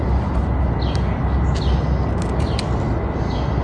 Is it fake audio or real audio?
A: real